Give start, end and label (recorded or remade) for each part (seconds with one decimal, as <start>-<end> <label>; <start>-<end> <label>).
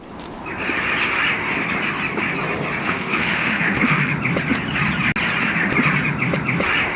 0.0-2.8 recorded; 2.8-4.1 remade; 4.1-7.0 recorded